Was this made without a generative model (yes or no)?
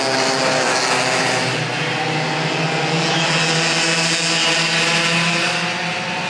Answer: yes